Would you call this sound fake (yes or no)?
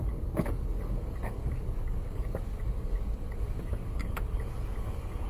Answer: yes